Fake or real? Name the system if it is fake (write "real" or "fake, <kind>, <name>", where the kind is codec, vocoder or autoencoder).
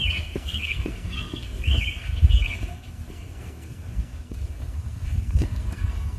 fake, codec, SNAC